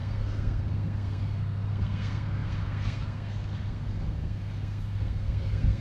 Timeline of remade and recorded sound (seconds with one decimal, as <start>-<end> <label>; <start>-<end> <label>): 0.0-5.8 remade